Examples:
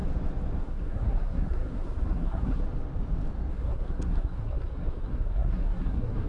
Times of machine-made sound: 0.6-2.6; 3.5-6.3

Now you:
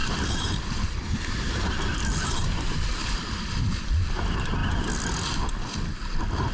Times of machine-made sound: 0.0-3.0; 3.6-4.6

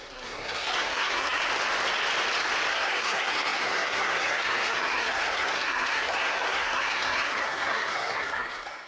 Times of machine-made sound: 0.0-1.4; 2.7-8.9

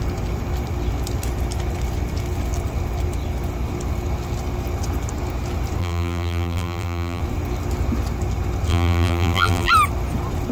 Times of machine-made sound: 5.8-7.2; 8.7-9.7